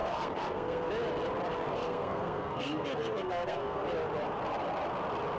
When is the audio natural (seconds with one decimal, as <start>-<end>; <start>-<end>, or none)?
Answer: 0.9-1.5; 3.8-5.4